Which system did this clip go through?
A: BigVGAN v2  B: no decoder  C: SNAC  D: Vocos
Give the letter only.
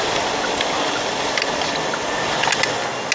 B